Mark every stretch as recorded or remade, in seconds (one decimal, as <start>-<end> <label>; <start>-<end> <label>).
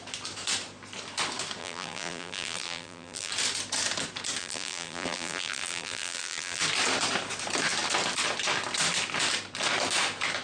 0.0-1.6 recorded; 1.6-3.3 remade; 3.3-4.4 recorded; 4.4-6.6 remade; 6.6-10.4 recorded